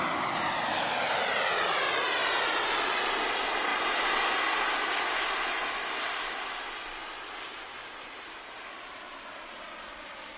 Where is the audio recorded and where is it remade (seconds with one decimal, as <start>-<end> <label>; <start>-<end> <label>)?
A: 0.0-10.4 recorded